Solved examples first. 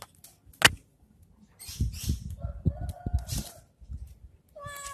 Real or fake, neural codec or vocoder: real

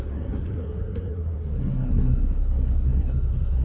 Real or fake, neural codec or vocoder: fake, codec, SNAC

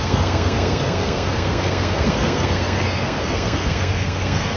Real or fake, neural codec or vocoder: fake, codec, SNAC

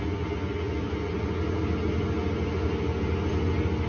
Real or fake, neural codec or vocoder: real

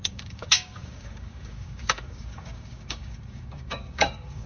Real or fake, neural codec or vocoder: fake, codec, DAC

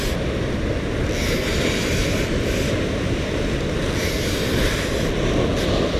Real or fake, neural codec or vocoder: real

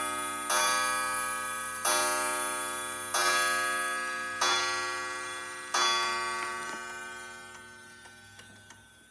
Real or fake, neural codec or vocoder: real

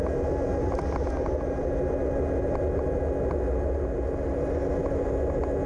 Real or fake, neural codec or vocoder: real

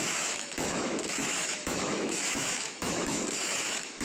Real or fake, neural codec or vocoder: fake, autoencoder, DAC-VAE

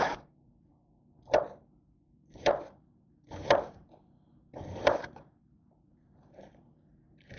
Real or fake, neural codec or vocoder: fake, vocoder, BigVGAN v2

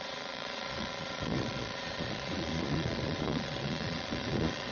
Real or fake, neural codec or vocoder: fake, vocoder, Vocos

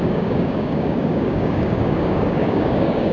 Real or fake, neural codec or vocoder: fake, codec, DAC